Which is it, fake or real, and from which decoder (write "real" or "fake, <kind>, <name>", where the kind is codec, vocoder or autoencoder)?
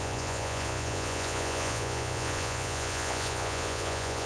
fake, vocoder, Vocos